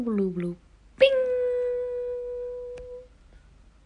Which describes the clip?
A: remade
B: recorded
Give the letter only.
B